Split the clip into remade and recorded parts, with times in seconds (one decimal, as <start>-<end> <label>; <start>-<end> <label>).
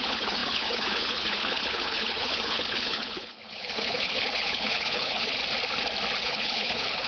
0.0-5.4 remade; 5.4-6.2 recorded; 6.2-7.1 remade